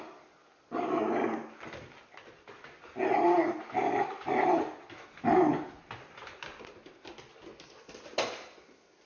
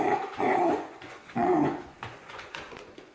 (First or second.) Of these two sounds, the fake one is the second